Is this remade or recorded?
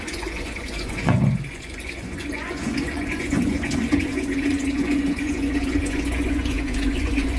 remade